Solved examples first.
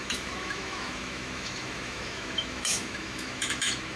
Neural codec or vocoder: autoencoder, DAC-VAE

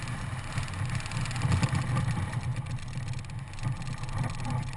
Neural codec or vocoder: none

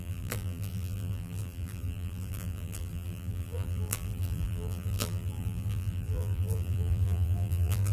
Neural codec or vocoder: vocoder, BigVGAN v2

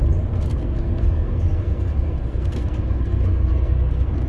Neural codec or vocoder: codec, SNAC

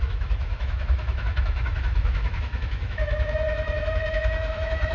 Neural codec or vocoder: autoencoder, DAC-VAE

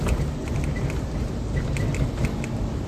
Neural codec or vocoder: none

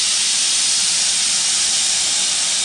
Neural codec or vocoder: none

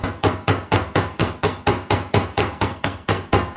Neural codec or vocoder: codec, SNAC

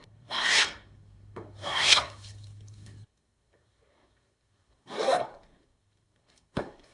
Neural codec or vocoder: codec, SNAC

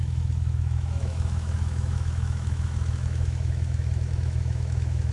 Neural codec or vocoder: autoencoder, DAC-VAE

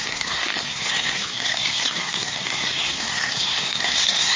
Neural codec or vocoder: codec, SNAC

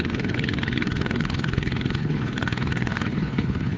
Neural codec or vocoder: codec, HILCodec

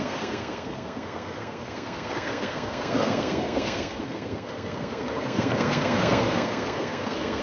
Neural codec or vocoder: codec, SNAC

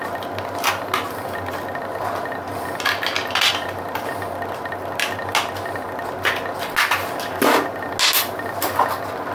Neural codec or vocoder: none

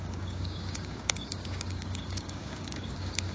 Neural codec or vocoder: codec, DAC